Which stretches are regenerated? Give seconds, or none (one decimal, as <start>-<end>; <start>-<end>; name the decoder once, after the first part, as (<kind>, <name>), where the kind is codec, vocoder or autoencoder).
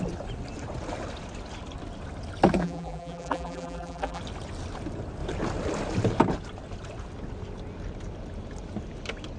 2.6-4.2 (vocoder, BigVGAN v2)